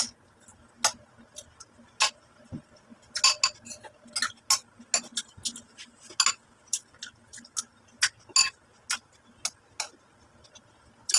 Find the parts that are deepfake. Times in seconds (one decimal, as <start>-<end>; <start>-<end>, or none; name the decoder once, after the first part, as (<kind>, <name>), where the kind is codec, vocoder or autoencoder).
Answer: none